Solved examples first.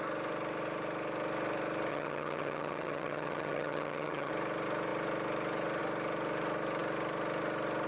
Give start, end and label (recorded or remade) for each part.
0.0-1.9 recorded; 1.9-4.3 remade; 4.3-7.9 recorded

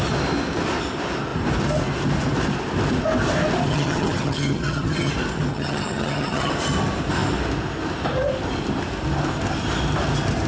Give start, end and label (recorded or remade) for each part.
0.0-3.7 recorded; 3.7-5.1 remade; 5.1-5.5 recorded; 5.5-6.5 remade; 6.5-10.5 recorded

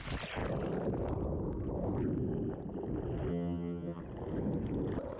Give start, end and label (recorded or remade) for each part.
0.0-3.3 recorded; 3.3-4.0 remade; 4.0-5.2 recorded

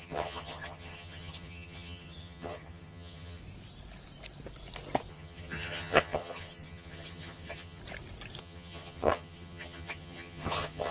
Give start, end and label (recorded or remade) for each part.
0.0-3.4 remade; 3.4-5.1 recorded; 5.1-7.8 remade; 7.8-8.4 recorded; 8.4-10.9 remade

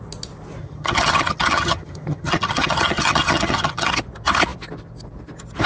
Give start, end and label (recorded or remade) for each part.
0.0-0.6 recorded; 0.6-3.9 remade; 3.9-5.7 recorded

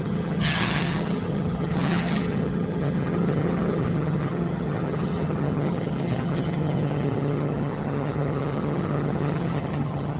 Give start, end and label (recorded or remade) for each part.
0.0-10.2 remade

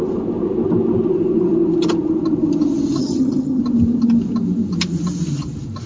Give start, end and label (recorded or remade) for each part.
0.0-3.0 recorded; 3.0-3.6 remade; 3.6-5.9 recorded